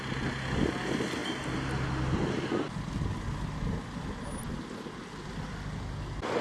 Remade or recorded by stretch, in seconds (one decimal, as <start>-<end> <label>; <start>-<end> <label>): 0.0-6.4 recorded